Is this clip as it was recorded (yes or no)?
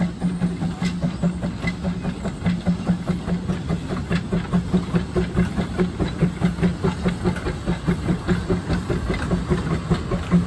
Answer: yes